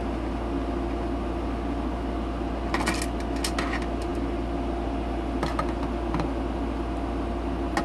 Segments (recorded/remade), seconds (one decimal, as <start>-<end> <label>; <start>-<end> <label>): 0.0-7.8 recorded